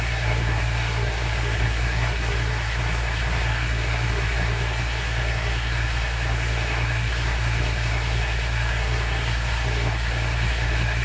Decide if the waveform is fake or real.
fake